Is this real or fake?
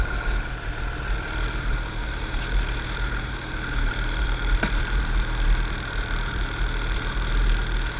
fake